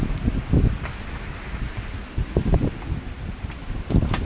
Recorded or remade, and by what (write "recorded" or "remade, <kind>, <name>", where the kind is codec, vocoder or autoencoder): recorded